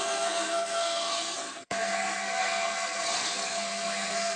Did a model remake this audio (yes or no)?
yes